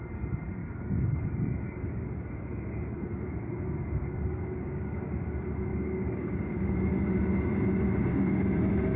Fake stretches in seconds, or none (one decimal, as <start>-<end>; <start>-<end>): 0.6-5.0; 5.7-6.9; 8.1-8.6